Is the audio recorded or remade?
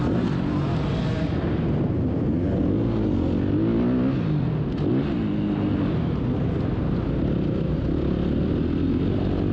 recorded